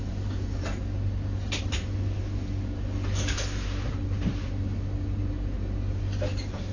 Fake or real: real